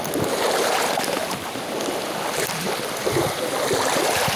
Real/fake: real